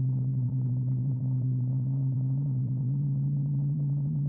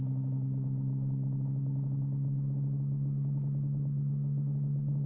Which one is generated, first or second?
first